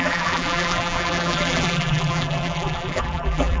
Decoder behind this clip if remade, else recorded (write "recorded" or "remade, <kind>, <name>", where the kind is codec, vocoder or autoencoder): remade, vocoder, BigVGAN v2